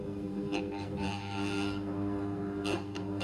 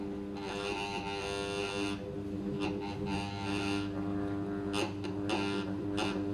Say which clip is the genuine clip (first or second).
second